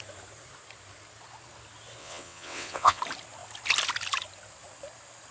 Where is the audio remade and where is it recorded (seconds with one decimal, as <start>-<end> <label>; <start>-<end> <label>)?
0.0-2.0 recorded; 2.0-3.0 remade; 3.0-5.3 recorded